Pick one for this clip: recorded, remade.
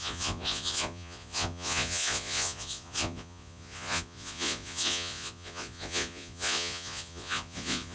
remade